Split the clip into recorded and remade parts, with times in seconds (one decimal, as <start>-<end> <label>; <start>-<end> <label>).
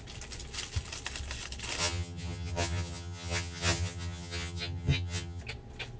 0.0-1.8 recorded; 1.8-5.4 remade; 5.4-6.0 recorded